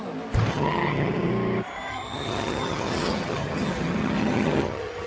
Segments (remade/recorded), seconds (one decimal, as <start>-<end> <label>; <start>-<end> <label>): 0.0-0.5 recorded; 0.5-1.3 remade; 1.3-1.9 recorded; 1.9-5.1 remade